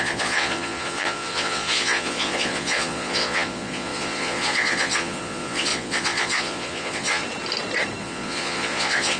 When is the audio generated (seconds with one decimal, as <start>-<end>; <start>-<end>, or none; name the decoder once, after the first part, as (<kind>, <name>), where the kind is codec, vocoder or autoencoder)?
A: 0.0-7.2 (vocoder, Vocos); 8.0-9.2